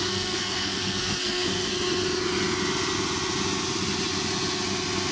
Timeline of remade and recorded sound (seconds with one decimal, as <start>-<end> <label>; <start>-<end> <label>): 0.0-1.7 remade; 1.7-5.1 recorded